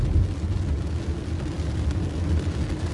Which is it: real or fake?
real